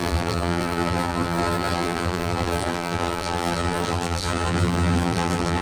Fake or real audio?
fake